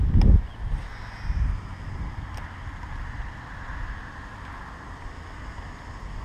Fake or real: real